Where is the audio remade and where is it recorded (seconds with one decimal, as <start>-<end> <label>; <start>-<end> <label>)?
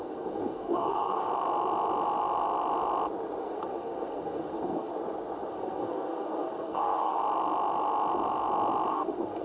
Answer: 0.0-1.3 remade; 1.3-3.4 recorded; 3.4-4.9 remade; 4.9-5.5 recorded; 5.5-7.2 remade; 7.2-8.9 recorded; 8.9-9.4 remade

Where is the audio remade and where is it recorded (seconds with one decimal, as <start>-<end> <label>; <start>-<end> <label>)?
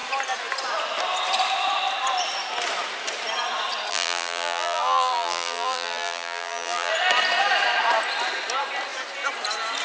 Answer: 0.0-3.9 recorded; 3.9-6.9 remade; 6.9-9.8 recorded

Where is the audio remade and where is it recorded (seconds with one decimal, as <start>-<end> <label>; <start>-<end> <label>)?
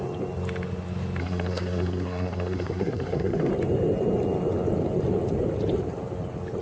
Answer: 0.0-1.2 recorded; 1.2-3.5 remade; 3.5-6.6 recorded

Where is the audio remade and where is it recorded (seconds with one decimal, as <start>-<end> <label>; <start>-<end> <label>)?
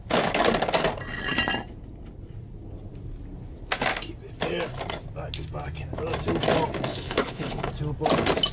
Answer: 0.0-6.9 recorded; 6.9-7.7 remade; 7.7-8.5 recorded